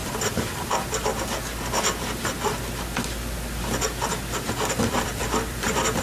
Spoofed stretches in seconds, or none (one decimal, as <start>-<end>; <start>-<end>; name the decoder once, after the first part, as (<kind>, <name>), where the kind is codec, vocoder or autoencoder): 0.0-1.1 (vocoder, BigVGAN v2); 4.7-6.0

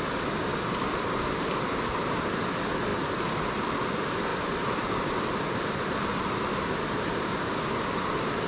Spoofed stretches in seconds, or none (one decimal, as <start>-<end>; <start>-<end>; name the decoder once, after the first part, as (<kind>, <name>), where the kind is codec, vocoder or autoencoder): 2.9-3.7 (vocoder, BigVGAN v2); 4.3-7.5

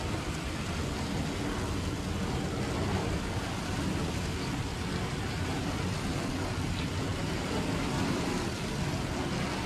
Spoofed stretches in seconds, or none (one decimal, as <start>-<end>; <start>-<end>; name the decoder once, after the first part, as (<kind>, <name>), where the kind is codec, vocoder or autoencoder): 3.0-5.8 (vocoder, BigVGAN v2); 7.1-8.5

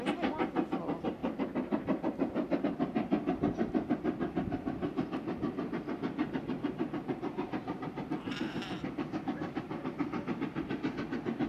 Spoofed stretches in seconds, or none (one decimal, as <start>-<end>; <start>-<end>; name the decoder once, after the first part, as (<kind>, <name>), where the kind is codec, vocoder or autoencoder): 6.2-10.7 (vocoder, BigVGAN v2)

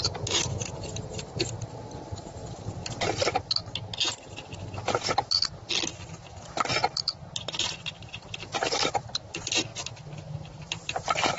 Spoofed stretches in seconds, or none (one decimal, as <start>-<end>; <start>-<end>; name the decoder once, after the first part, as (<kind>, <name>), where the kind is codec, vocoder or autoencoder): 0.0-2.8 (vocoder, BigVGAN v2); 6.4-9.7; 10.5-11.4

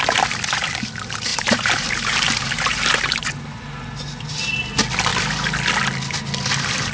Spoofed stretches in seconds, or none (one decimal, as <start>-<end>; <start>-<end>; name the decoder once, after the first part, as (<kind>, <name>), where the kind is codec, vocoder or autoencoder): 1.3-3.4 (vocoder, BigVGAN v2)

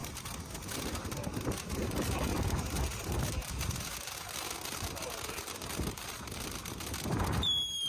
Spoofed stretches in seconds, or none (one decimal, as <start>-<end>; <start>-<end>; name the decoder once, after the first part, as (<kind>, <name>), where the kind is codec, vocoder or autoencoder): 2.3-2.8 (vocoder, BigVGAN v2); 6.6-7.2